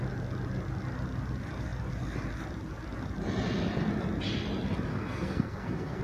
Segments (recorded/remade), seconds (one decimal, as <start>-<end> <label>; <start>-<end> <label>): 0.0-4.9 recorded; 4.9-6.0 remade